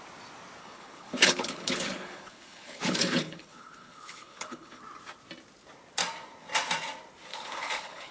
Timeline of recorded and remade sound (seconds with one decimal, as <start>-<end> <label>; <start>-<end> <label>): 0.0-0.6 recorded; 0.6-4.8 remade; 4.8-7.3 recorded; 7.3-8.1 remade